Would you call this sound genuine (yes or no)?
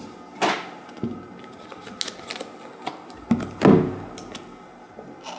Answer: yes